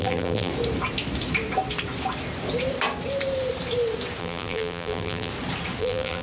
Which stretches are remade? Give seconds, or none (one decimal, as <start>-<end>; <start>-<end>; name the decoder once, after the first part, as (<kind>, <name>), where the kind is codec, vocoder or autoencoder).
0.0-0.5 (vocoder, BigVGAN v2); 4.2-5.3; 5.8-6.2